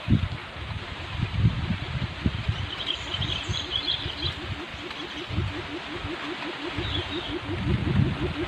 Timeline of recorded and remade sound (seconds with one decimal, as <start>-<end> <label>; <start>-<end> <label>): 0.0-0.4 recorded; 0.4-4.1 remade; 4.1-8.5 recorded